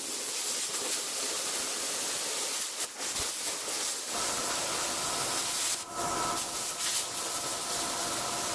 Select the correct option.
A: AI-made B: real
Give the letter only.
B